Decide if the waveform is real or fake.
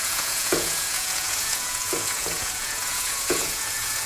fake